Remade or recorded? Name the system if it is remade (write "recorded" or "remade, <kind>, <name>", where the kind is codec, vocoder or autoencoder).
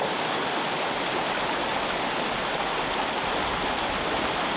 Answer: recorded